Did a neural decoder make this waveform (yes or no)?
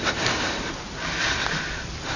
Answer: no